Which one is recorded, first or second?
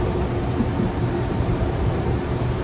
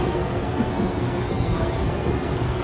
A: first